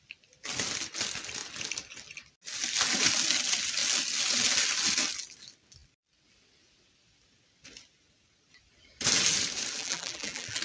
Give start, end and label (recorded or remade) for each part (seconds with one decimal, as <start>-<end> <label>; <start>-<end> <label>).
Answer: 0.0-9.8 recorded; 9.8-10.6 remade